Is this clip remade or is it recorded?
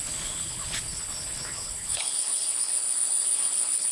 remade